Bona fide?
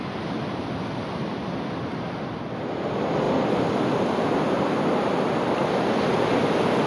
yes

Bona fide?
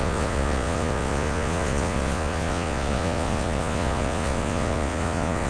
no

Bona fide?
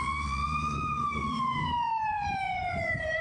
no